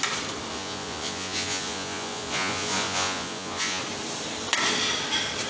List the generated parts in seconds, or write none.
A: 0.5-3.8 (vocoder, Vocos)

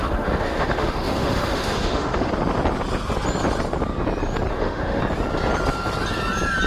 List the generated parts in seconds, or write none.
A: 0.0-2.3 (autoencoder, DAC-VAE); 4.5-5.0

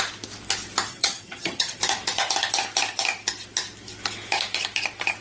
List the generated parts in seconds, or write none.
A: 0.9-1.8 (vocoder, HiFi-GAN)

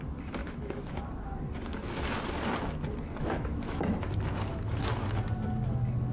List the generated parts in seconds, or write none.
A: 0.4-1.0 (autoencoder, DAC-VAE); 3.2-3.8